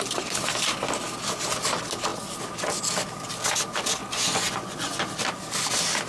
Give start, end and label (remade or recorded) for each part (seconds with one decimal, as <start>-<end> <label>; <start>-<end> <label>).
0.0-4.0 recorded; 4.0-5.0 remade; 5.0-6.1 recorded